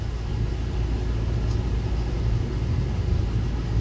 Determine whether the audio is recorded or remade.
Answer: recorded